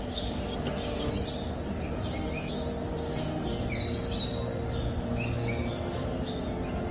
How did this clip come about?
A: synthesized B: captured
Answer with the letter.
B